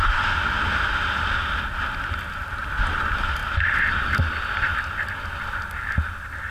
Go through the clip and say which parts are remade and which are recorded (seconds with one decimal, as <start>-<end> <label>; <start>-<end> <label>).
0.0-6.5 recorded